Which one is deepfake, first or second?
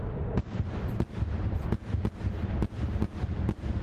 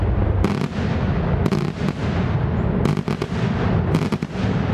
first